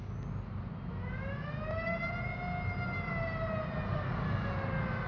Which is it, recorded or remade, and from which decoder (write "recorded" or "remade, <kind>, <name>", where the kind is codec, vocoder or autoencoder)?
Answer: recorded